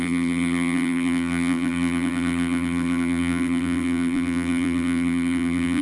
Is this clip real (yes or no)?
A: no